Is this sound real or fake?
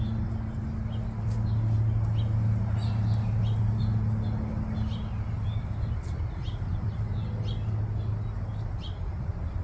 real